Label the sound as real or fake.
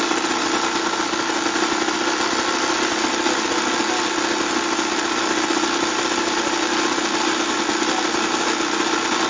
real